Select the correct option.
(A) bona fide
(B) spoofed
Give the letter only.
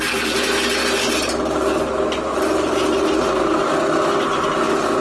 A